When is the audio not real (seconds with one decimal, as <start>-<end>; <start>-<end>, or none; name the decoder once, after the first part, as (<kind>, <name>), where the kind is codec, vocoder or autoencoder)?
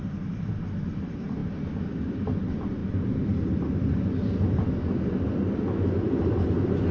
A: none